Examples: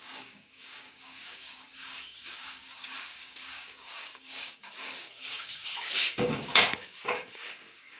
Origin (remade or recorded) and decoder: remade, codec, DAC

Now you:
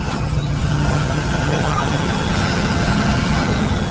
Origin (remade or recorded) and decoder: remade, vocoder, HiFi-GAN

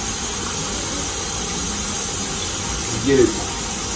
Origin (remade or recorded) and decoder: recorded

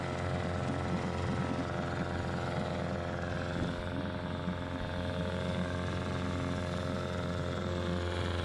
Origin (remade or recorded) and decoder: recorded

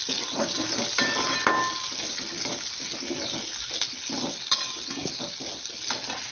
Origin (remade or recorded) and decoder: recorded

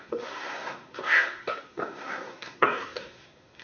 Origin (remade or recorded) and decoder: remade, codec, SNAC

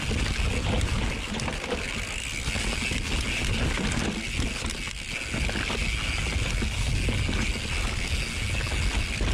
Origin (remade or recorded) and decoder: recorded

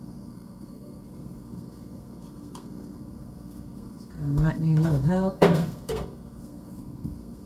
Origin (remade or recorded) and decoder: remade, codec, SNAC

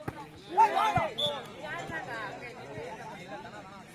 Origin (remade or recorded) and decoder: recorded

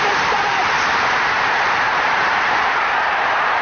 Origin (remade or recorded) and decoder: remade, vocoder, BigVGAN v2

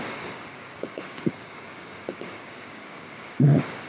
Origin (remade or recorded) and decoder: remade, codec, DAC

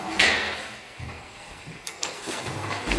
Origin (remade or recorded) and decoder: remade, codec, SNAC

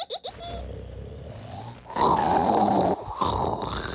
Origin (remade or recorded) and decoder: recorded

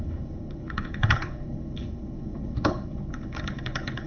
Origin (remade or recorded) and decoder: remade, codec, HILCodec